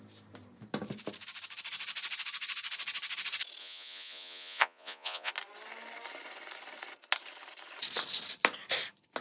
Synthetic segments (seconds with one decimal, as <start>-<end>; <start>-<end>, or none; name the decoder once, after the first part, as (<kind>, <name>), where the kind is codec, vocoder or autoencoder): 3.6-5.3 (vocoder, Vocos)